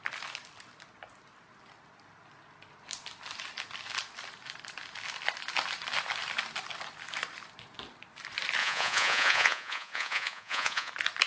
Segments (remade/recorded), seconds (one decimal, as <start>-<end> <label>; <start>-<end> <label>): 0.0-8.6 recorded; 8.6-10.9 remade; 10.9-11.3 recorded